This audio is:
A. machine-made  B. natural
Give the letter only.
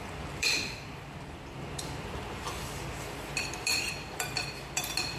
A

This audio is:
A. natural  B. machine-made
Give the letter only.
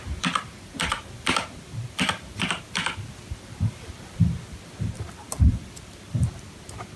B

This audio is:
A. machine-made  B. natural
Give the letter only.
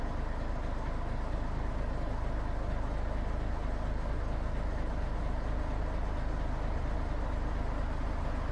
B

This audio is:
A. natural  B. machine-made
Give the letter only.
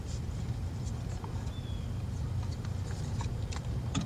B